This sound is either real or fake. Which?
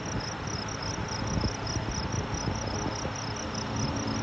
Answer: real